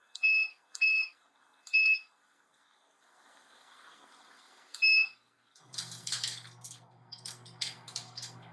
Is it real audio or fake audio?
fake